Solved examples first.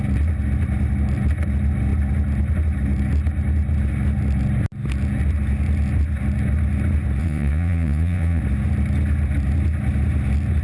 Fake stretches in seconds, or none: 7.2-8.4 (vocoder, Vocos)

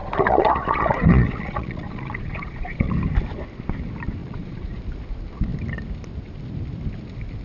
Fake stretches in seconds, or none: 0.0-2.9 (vocoder, Vocos); 4.2-4.8

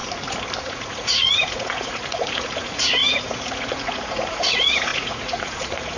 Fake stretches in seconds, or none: 0.6-6.0 (vocoder, Vocos)

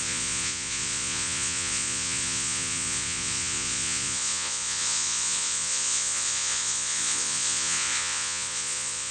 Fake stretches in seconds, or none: 0.0-9.1 (vocoder, Vocos)

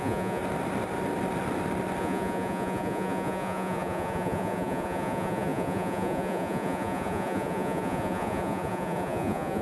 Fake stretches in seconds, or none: 0.0-0.4 (vocoder, Vocos); 2.0-9.6

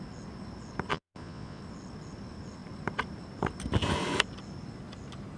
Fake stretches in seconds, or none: 0.9-1.6 (vocoder, Vocos)

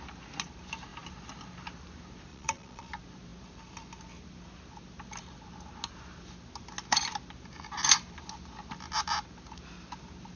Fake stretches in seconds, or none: 2.3-2.9 (vocoder, Vocos)